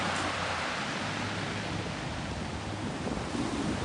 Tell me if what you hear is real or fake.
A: real